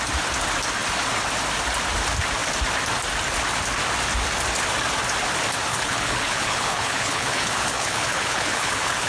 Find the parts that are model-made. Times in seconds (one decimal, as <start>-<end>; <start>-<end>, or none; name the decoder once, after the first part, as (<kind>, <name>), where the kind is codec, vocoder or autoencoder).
5.7-9.1 (codec, HILCodec)